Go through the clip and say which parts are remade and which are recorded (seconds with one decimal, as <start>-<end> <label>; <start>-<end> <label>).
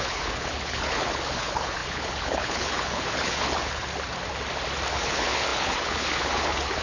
0.0-3.8 remade; 3.8-4.9 recorded; 4.9-6.8 remade